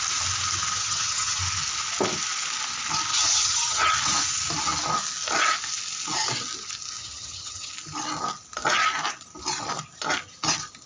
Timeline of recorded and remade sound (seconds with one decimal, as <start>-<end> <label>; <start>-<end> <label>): 0.0-0.8 recorded; 0.8-1.4 remade; 1.4-3.1 recorded; 3.1-3.9 remade; 3.9-7.0 recorded; 7.0-7.7 remade; 7.7-10.9 recorded